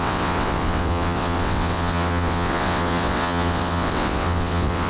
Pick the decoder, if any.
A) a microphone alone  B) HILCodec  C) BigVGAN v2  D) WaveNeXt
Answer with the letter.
D